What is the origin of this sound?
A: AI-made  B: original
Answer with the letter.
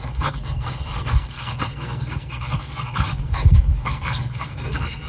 A